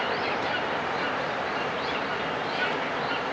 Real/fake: fake